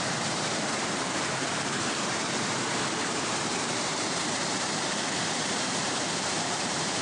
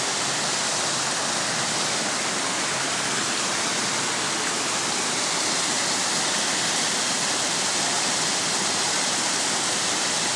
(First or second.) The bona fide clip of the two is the second